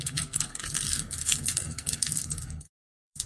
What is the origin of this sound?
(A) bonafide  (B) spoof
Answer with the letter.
B